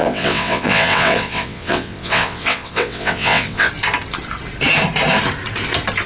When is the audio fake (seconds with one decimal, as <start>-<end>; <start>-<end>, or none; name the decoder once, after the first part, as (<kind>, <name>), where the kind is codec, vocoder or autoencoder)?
0.0-3.7 (vocoder, WaveNeXt)